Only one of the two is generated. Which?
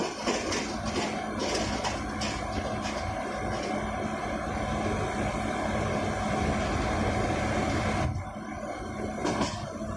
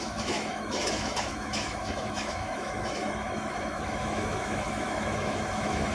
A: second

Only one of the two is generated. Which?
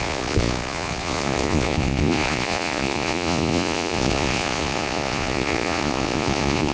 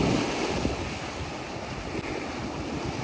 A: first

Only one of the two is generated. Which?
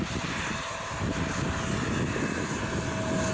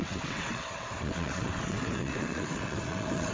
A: second